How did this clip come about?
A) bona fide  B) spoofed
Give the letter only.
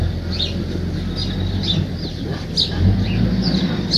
A